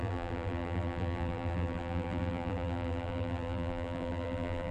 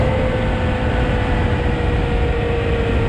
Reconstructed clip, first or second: first